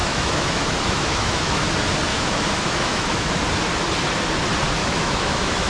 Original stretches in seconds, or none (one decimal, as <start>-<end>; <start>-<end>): 1.7-2.1; 3.3-4.8